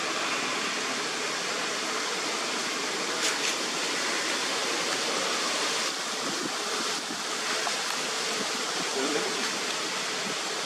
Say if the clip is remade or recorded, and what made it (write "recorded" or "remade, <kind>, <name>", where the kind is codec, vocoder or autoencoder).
recorded